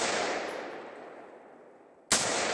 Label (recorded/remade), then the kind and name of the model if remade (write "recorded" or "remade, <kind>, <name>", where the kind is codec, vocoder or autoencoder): recorded